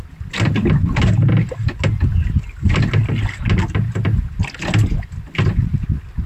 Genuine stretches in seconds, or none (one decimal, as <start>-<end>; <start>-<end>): 0.0-6.3